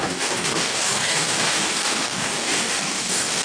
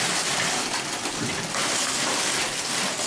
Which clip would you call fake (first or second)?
first